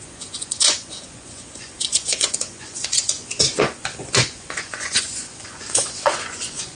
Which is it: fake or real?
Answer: fake